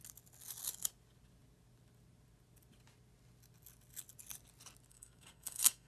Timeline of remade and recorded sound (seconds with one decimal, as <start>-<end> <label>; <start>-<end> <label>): 0.0-4.9 recorded; 4.9-5.9 remade